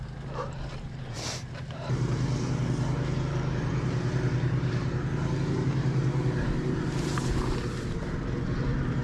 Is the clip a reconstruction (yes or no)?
yes